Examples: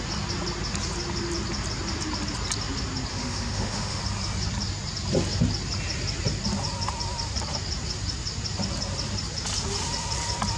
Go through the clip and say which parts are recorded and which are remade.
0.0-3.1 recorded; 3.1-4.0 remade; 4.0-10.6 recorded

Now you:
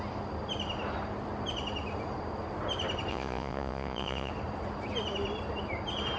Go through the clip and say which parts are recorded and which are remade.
0.0-3.1 recorded; 3.1-4.3 remade; 4.3-6.2 recorded

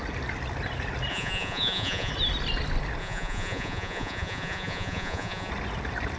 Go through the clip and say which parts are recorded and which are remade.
0.0-1.1 recorded; 1.1-2.1 remade; 2.1-3.0 recorded; 3.0-5.5 remade; 5.5-6.2 recorded